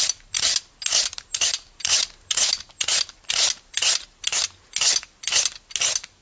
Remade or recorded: recorded